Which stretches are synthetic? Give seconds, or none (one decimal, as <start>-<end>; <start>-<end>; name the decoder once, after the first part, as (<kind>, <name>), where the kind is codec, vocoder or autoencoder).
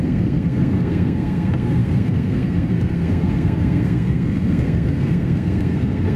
0.0-6.2 (codec, SNAC)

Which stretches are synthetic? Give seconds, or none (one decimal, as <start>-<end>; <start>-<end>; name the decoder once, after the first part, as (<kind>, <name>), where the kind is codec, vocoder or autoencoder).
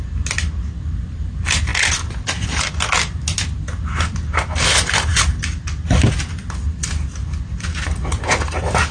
none